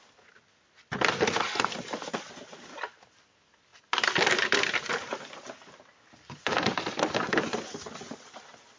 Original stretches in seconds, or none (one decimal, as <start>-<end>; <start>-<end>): 0.0-3.7; 6.9-8.8